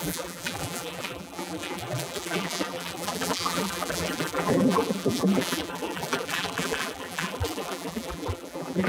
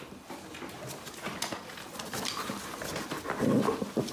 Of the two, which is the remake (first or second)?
first